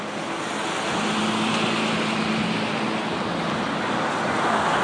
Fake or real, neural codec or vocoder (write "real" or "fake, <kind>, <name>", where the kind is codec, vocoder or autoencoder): real